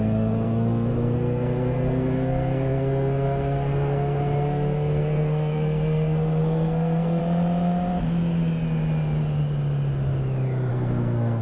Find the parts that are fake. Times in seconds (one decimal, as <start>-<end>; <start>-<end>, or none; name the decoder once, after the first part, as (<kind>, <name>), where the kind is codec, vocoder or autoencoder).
0.0-7.2 (codec, SNAC); 10.7-11.4